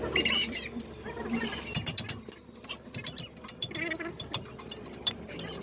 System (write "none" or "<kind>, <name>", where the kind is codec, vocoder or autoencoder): vocoder, BigVGAN v2